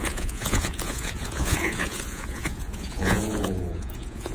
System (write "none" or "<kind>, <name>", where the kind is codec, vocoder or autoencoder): vocoder, Vocos